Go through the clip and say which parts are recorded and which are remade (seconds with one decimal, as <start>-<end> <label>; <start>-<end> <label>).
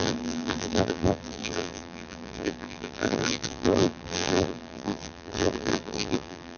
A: 0.0-6.6 remade